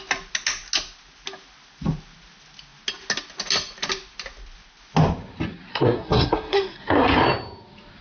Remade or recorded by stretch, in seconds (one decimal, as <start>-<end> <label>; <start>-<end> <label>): 0.0-5.7 recorded; 5.7-7.2 remade; 7.2-8.0 recorded